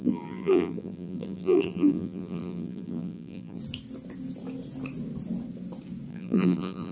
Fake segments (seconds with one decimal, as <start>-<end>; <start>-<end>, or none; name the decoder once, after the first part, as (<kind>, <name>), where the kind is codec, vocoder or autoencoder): 0.0-3.6 (vocoder, BigVGAN v2); 6.1-6.9